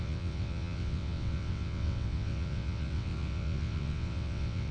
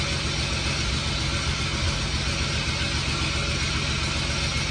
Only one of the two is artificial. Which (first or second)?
first